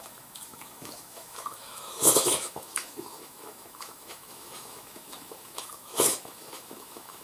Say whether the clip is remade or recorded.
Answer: remade